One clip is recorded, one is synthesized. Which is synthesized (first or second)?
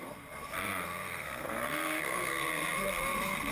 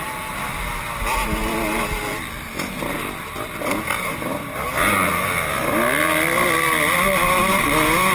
first